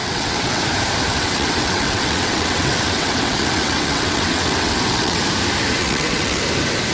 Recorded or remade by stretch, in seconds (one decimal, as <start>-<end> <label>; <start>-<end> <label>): 0.0-0.6 remade; 0.6-1.1 recorded; 1.1-5.2 remade; 5.2-5.8 recorded; 5.8-6.4 remade; 6.4-6.9 recorded